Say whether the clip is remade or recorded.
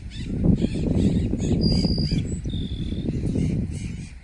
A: recorded